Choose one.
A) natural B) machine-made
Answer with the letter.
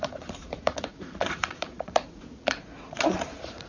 B